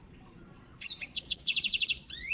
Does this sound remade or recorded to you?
remade